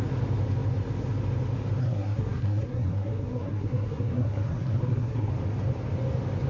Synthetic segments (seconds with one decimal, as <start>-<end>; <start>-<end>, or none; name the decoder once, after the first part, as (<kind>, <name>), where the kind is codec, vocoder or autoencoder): 1.8-5.3 (codec, SNAC)